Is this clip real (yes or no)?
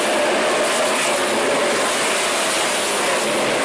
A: yes